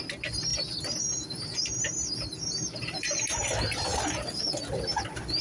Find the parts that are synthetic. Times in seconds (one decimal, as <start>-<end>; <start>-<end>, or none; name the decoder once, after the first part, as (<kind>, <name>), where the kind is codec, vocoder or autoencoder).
2.3-3.5 (vocoder, BigVGAN v2)